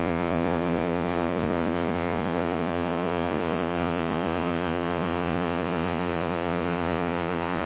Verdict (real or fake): fake